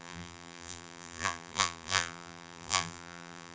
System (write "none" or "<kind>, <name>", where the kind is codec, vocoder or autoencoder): vocoder, BigVGAN v2